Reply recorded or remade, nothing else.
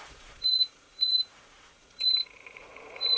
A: remade